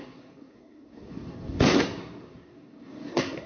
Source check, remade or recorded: remade